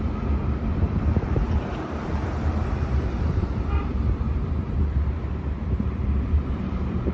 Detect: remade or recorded remade